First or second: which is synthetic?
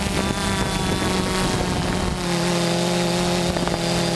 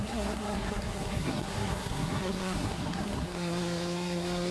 second